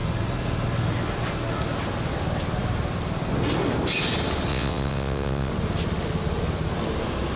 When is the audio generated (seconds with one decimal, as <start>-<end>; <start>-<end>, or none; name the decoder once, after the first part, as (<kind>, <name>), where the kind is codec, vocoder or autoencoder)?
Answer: 4.5-5.5 (vocoder, WaveNeXt)